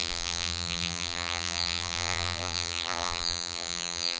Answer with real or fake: fake